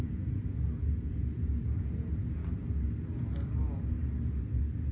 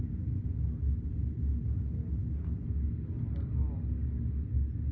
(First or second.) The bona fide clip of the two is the second